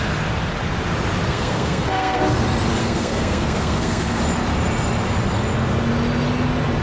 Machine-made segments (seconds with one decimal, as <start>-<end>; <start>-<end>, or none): 1.3-2.2; 2.8-4.2